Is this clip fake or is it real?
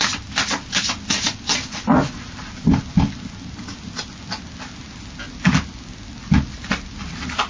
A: real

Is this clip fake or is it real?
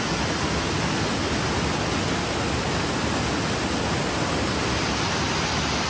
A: real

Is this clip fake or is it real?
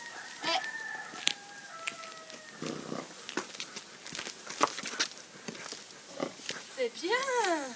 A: real